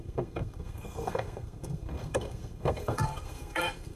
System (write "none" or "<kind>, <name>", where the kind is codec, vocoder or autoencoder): codec, SNAC